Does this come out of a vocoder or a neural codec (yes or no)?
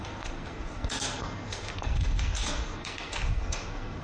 yes